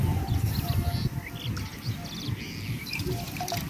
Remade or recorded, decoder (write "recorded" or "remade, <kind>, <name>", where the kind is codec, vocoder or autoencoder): recorded